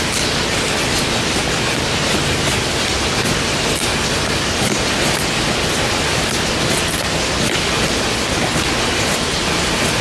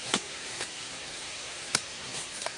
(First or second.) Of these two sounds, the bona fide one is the first